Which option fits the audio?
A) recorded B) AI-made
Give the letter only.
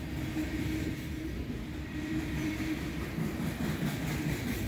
A